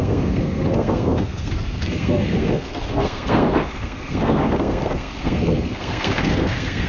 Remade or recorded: remade